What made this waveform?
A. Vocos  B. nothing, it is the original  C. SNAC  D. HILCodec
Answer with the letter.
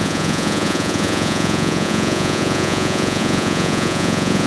A